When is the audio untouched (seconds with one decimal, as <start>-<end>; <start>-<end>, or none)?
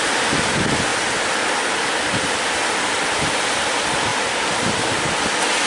0.0-4.1; 5.2-5.7